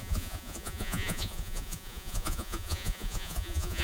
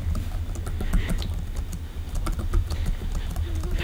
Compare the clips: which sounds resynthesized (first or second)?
first